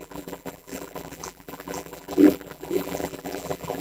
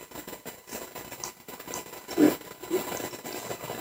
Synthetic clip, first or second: first